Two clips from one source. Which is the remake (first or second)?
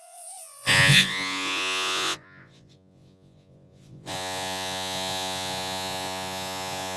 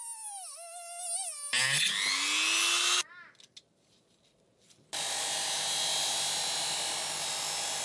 first